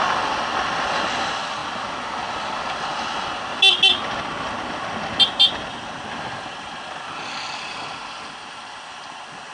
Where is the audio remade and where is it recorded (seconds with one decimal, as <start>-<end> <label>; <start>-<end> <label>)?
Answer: 0.0-9.5 recorded